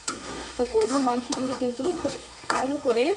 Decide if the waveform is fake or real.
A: fake